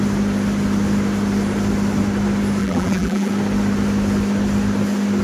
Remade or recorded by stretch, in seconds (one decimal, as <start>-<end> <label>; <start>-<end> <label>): 0.0-2.6 recorded; 2.6-3.3 remade; 3.3-5.2 recorded